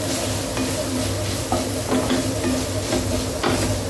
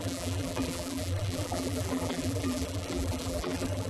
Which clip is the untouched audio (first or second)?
first